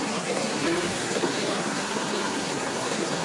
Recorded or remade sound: remade